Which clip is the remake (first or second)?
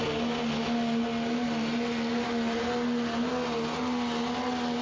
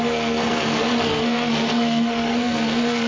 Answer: second